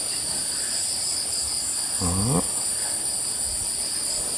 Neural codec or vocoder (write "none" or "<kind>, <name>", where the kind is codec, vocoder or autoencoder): none